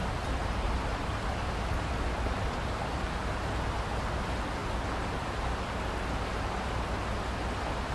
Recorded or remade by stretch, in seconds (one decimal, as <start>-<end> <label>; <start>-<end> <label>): 0.0-0.4 recorded; 0.4-1.0 remade; 1.0-7.9 recorded